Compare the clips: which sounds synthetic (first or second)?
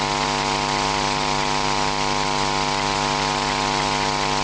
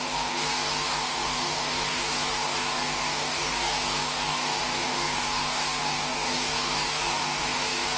second